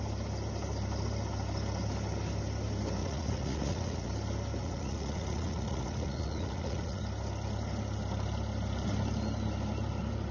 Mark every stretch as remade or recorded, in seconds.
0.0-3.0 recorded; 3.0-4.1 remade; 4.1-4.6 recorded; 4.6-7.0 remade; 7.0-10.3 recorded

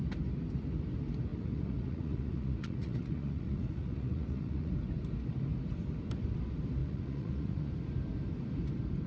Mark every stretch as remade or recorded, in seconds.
0.0-1.3 recorded; 1.3-4.7 remade; 4.7-6.8 recorded; 6.8-7.7 remade; 7.7-9.1 recorded